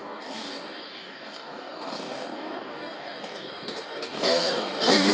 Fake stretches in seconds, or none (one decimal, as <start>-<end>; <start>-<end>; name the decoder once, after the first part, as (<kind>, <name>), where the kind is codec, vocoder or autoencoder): 0.0-5.1 (codec, DAC)